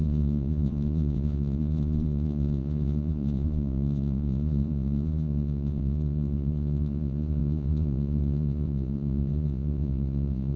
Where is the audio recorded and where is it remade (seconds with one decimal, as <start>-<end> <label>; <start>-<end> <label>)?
0.0-10.6 remade